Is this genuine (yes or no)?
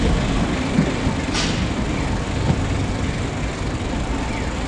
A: yes